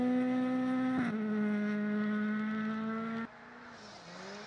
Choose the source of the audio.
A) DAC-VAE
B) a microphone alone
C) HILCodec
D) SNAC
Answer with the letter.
B